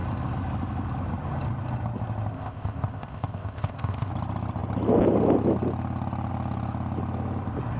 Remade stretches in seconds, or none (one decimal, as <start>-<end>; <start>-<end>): 2.3-4.1